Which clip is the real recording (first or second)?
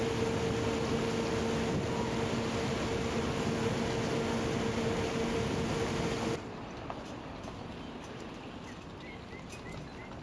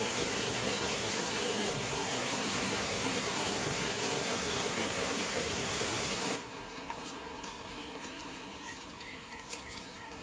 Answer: first